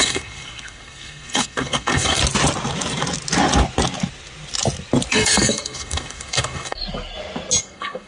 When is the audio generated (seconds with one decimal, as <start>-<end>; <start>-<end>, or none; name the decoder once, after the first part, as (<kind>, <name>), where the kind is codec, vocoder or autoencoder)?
0.0-2.2 (codec, SNAC); 5.1-6.8; 7.6-8.1